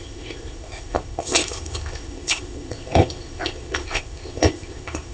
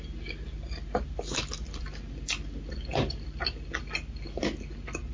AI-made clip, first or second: first